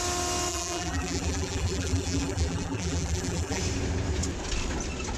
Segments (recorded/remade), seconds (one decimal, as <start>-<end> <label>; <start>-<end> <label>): 0.0-0.5 recorded; 0.5-3.6 remade; 3.6-5.2 recorded